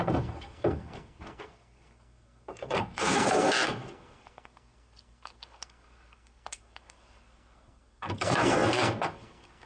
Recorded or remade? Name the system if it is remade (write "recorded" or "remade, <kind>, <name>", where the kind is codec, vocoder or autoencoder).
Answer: remade, codec, SNAC